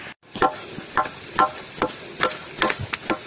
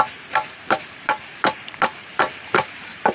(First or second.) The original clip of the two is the first